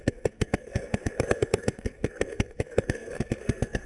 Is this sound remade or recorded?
remade